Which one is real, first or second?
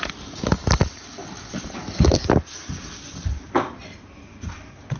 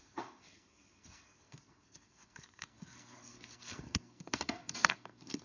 first